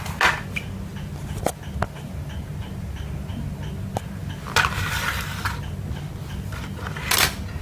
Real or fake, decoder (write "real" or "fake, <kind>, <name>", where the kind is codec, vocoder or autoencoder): real